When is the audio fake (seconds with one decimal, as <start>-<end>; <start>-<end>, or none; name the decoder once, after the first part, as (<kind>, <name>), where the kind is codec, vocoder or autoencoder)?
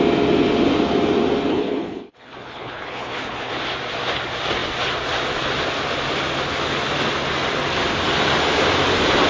1.5-3.5 (codec, HILCodec)